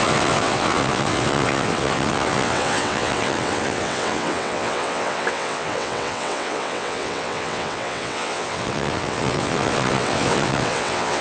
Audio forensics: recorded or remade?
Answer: remade